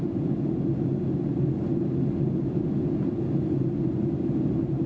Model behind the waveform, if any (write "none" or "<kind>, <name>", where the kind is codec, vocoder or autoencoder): none